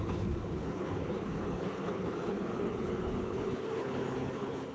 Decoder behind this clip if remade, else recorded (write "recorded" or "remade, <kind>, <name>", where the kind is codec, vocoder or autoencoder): remade, codec, HILCodec